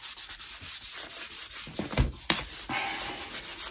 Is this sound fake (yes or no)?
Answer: no